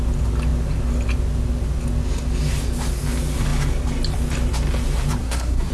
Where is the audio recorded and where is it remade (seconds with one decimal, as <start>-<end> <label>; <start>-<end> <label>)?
0.0-5.2 recorded; 5.2-5.7 remade